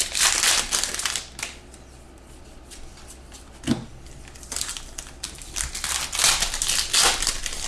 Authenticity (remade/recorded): recorded